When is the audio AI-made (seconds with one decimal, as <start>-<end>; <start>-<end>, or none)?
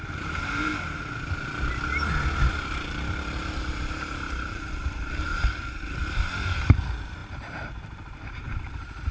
0.0-0.7; 2.5-5.3; 6.1-9.1